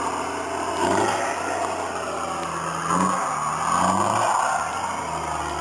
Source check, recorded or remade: recorded